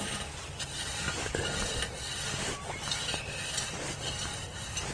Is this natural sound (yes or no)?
yes